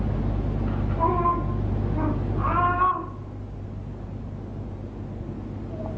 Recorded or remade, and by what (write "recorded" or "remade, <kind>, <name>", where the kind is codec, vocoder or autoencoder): recorded